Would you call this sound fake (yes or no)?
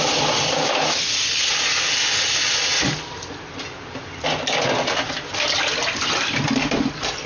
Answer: no